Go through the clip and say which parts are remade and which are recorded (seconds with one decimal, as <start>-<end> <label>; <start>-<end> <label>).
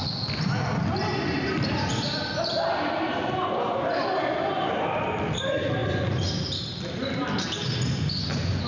0.0-8.7 recorded